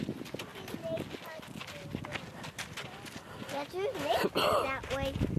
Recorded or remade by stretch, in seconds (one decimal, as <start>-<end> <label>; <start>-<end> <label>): 0.0-5.4 recorded